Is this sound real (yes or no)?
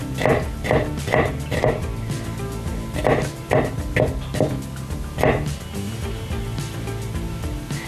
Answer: yes